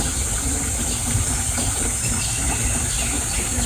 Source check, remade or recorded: recorded